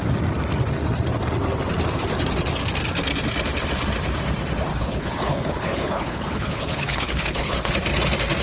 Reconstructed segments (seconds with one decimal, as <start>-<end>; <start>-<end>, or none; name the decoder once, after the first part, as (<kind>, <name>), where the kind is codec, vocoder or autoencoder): 4.7-7.7 (codec, HILCodec)